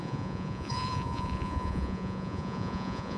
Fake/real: fake